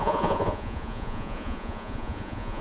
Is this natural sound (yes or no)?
no